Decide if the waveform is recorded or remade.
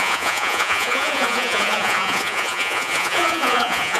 remade